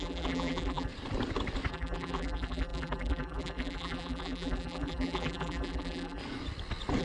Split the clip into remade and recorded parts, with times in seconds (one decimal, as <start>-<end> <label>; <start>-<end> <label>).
0.0-0.9 remade; 0.9-1.7 recorded; 1.7-6.2 remade; 6.2-7.0 recorded